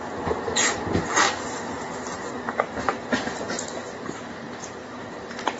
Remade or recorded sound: remade